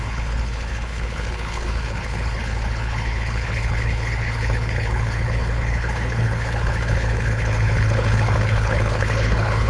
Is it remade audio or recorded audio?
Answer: remade